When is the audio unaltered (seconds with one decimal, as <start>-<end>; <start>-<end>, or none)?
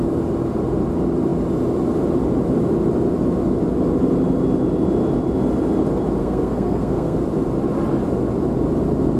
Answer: 0.0-6.2; 7.2-9.2